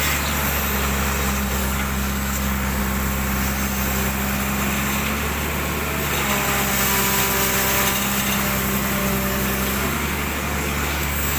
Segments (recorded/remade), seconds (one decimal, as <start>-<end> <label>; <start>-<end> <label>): 0.0-1.6 recorded; 1.6-2.8 remade; 2.8-9.0 recorded; 9.0-11.4 remade

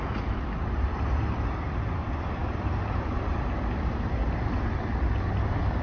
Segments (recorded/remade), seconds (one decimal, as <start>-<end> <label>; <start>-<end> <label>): 0.0-5.8 recorded